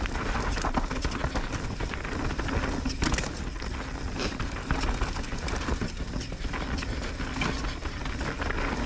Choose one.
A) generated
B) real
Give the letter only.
B